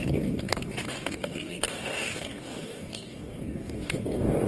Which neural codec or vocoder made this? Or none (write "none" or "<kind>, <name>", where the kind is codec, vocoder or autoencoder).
codec, DAC